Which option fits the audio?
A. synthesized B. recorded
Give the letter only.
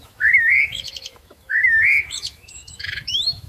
A